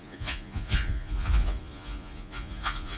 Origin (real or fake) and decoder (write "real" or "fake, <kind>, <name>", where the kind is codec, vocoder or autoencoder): fake, vocoder, Vocos